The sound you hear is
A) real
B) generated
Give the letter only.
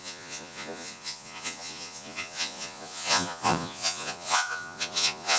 B